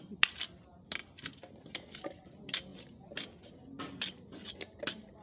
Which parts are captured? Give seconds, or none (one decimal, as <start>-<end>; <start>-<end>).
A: 0.0-5.2